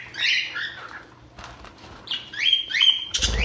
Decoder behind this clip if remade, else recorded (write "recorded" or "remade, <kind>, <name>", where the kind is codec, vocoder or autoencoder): remade, vocoder, BigVGAN v2